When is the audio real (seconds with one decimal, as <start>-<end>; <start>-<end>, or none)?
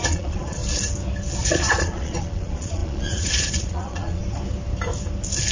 0.6-1.4; 4.2-5.5